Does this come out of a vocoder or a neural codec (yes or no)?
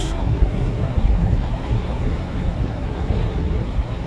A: yes